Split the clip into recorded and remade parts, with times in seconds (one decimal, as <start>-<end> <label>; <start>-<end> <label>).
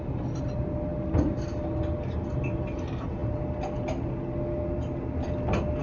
0.0-5.8 recorded